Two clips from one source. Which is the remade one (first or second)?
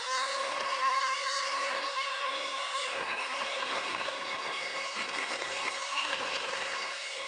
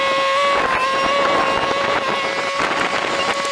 first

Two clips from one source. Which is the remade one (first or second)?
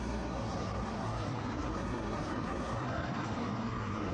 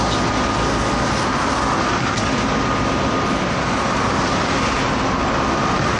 first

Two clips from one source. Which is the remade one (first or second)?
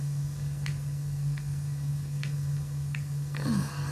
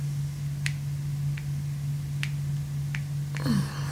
first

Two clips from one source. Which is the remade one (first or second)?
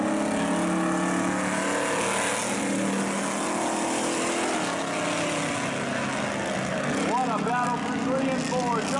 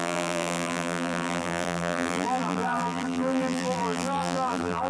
second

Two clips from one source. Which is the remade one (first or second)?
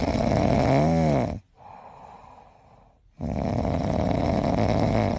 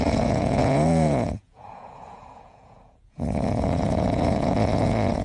second